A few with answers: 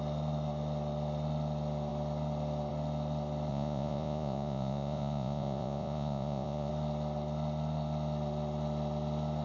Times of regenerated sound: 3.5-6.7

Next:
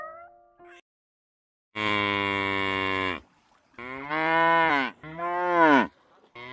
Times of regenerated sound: 1.6-4.7

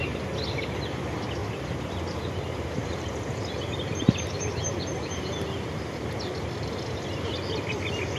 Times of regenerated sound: 1.4-5.2

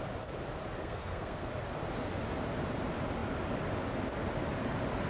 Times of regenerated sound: 0.8-1.5

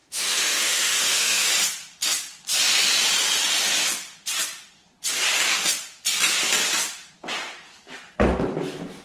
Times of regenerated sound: 0.0-1.5

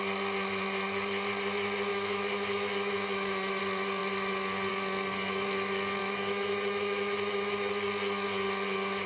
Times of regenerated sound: 1.9-3.6; 6.0-7.7

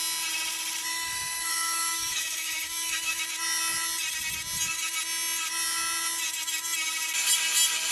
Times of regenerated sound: 0.9-3.2

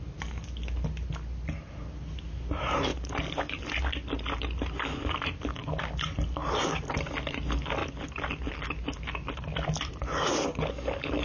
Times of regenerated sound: 2.9-3.8; 7.8-8.5